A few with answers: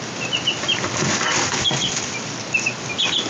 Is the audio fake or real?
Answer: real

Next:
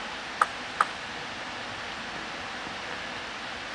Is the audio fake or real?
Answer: real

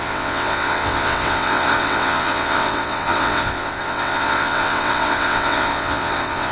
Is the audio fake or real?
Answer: fake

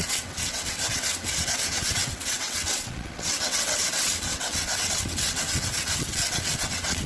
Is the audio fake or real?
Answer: fake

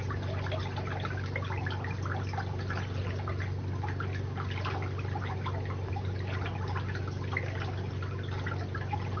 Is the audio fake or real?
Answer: real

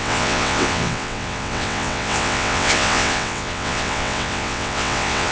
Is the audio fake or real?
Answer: fake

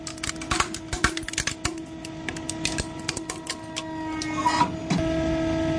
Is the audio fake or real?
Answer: real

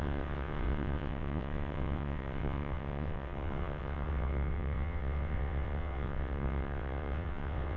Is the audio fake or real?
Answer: fake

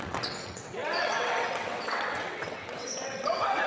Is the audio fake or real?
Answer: fake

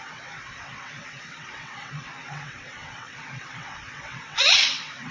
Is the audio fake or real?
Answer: fake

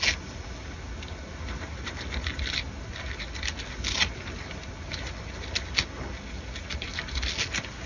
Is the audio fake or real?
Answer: real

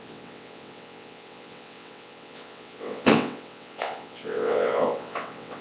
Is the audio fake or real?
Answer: fake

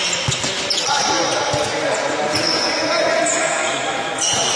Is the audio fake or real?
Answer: real